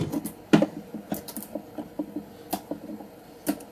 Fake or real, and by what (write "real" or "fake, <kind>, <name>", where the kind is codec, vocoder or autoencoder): real